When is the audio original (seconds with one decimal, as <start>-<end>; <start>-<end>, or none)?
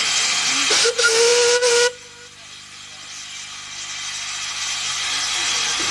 0.0-5.9